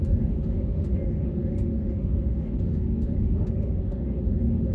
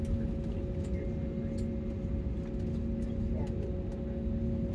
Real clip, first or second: second